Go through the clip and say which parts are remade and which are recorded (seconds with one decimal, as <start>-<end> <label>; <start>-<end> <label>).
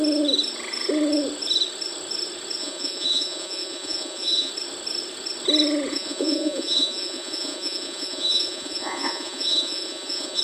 0.0-2.6 recorded; 2.6-4.5 remade; 4.5-5.9 recorded; 5.9-10.4 remade